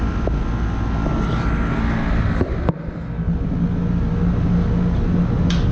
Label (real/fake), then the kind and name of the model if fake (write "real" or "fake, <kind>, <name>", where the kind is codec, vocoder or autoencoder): real